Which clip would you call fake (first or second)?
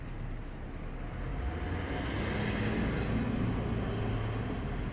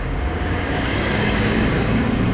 second